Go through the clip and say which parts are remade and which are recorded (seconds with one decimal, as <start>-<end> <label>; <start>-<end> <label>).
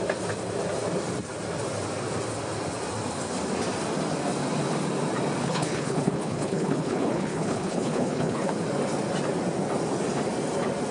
0.0-5.4 recorded; 5.4-8.5 remade; 8.5-10.9 recorded